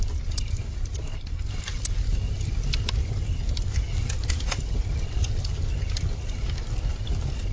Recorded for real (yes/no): yes